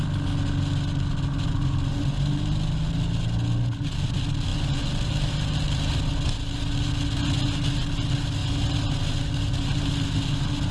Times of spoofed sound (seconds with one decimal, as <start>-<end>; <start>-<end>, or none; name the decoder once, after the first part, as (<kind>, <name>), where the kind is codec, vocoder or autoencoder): none